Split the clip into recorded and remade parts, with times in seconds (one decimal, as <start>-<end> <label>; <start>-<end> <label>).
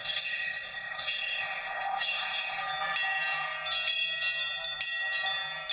0.0-2.6 remade; 2.6-5.7 recorded